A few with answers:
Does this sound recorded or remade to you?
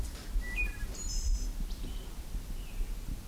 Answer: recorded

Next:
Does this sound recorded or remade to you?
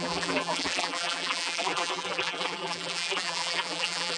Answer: remade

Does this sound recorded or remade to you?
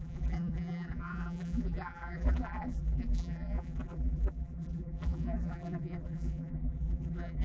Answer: remade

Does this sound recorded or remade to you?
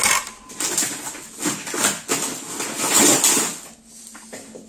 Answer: recorded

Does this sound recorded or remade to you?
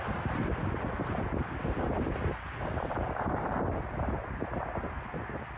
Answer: recorded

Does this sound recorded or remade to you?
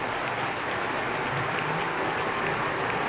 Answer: recorded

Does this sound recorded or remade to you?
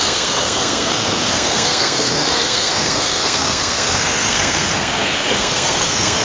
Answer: remade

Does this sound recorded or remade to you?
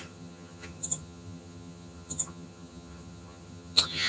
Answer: remade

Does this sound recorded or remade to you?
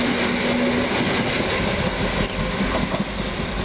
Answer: recorded